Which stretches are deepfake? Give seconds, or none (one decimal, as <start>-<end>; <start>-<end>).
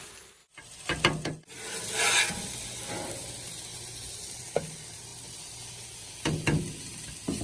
none